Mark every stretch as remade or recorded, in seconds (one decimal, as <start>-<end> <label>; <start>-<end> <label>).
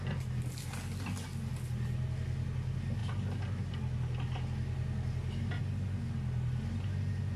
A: 0.0-7.4 recorded